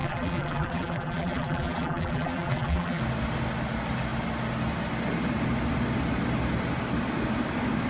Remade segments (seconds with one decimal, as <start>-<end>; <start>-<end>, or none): 0.0-3.0